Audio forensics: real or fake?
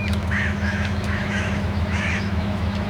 fake